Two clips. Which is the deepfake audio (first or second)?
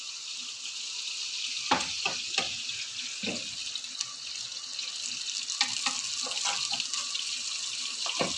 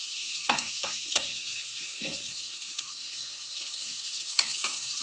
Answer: second